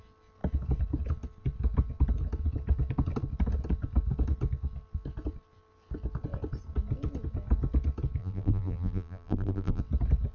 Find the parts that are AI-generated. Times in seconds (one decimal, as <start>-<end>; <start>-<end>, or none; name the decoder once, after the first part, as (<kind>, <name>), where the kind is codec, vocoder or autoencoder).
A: 8.2-9.8 (vocoder, BigVGAN v2)